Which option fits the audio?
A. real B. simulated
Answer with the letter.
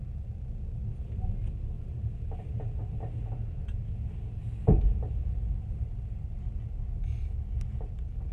A